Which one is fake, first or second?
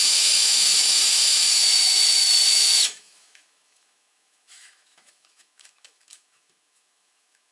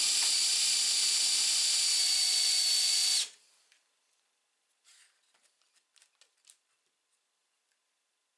first